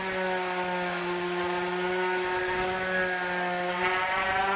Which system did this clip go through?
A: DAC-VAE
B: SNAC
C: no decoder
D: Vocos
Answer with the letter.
C